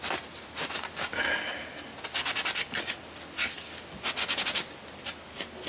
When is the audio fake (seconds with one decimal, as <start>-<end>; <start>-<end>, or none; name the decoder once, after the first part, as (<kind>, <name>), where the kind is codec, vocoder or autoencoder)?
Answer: none